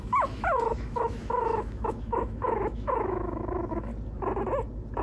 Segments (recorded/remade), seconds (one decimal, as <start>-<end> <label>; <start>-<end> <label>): 0.0-3.9 remade; 3.9-5.0 recorded